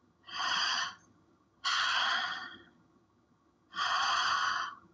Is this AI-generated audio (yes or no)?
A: yes